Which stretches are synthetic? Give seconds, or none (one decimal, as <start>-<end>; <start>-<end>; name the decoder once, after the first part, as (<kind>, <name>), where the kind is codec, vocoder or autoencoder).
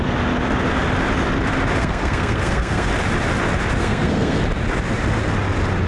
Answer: 1.8-2.9 (codec, SNAC); 3.8-4.4